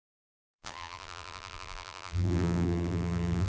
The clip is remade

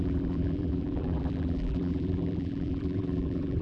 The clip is remade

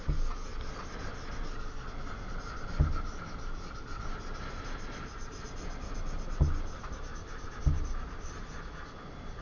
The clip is recorded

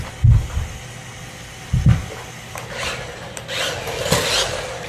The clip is recorded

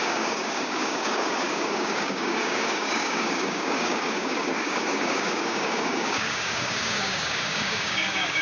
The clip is remade